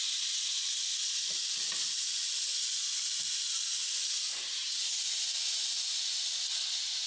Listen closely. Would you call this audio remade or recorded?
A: recorded